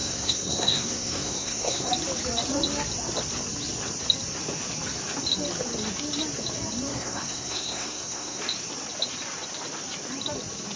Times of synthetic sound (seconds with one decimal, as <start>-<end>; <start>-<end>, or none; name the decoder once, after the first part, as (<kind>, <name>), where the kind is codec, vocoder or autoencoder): 0.0-1.9 (codec, SNAC); 6.9-8.4